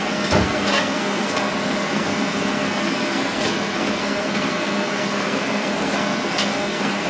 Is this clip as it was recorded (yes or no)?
no